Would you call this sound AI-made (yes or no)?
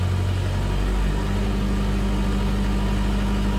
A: no